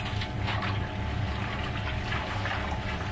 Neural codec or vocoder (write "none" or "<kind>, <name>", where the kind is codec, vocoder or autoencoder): none